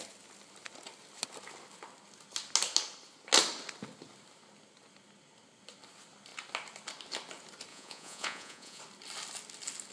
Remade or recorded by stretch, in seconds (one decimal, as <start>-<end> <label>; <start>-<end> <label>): 0.0-7.7 recorded; 7.7-8.8 remade; 8.8-9.9 recorded